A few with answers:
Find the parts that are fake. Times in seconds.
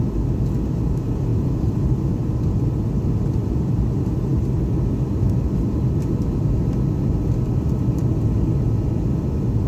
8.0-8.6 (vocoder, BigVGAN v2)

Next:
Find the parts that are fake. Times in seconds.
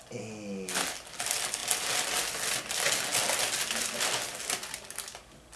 none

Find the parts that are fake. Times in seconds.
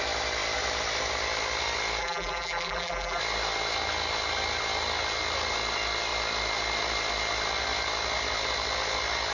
2.0-3.2 (vocoder, BigVGAN v2)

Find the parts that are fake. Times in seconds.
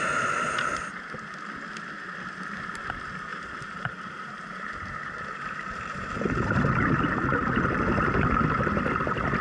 3.3-6.7 (vocoder, BigVGAN v2)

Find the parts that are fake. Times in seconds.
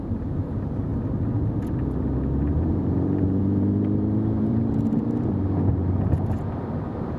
0.0-0.9 (vocoder, BigVGAN v2); 2.5-7.2